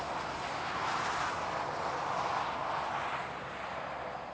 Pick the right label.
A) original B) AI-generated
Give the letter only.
A